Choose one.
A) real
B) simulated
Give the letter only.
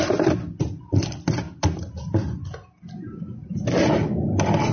A